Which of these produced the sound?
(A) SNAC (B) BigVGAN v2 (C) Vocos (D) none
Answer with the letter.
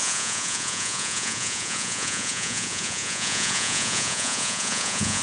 C